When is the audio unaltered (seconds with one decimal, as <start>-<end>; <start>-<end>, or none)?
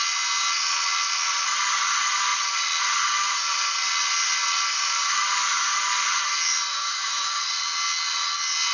0.0-6.7; 7.4-8.7